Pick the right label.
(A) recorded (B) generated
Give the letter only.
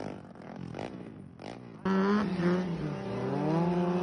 A